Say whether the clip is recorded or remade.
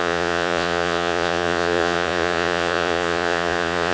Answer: remade